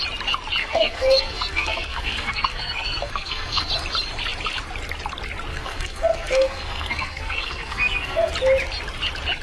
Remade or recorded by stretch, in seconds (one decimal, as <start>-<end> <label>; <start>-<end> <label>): 0.0-0.6 recorded; 0.6-3.7 remade; 3.7-5.5 recorded; 5.5-8.3 remade; 8.3-9.4 recorded